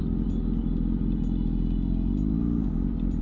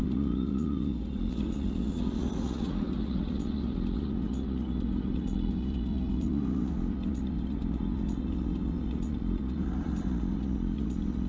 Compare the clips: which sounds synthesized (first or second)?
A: second